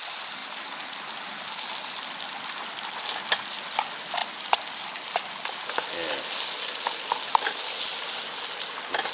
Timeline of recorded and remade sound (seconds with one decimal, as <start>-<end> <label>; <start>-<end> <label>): 0.0-9.1 recorded